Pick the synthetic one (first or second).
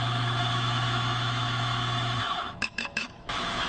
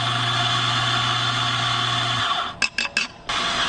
first